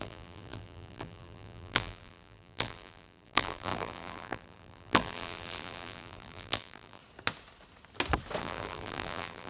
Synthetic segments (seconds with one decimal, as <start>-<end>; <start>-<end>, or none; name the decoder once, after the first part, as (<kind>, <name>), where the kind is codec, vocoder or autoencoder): 0.0-7.0 (vocoder, BigVGAN v2); 8.4-9.5